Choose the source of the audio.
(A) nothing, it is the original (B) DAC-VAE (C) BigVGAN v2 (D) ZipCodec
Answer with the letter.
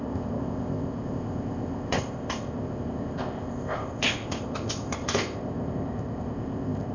D